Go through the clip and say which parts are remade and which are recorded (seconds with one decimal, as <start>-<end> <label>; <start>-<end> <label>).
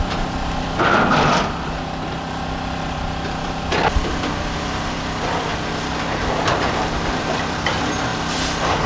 0.0-5.5 remade; 5.5-7.2 recorded; 7.2-8.1 remade; 8.1-8.9 recorded